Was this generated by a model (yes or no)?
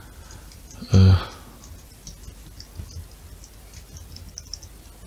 no